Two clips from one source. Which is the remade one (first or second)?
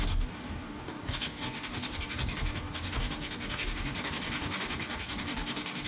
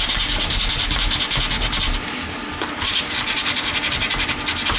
first